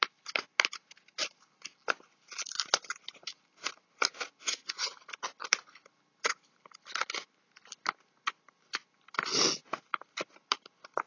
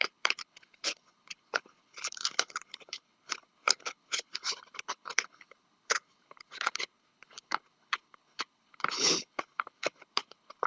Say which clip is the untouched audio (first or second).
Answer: first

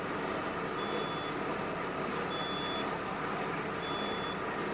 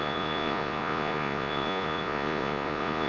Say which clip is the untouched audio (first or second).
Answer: first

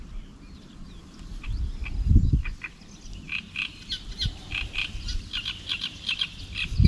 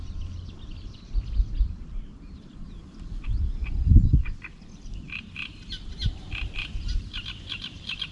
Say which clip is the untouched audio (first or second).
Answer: first